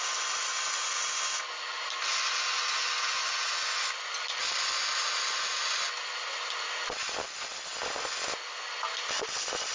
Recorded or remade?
recorded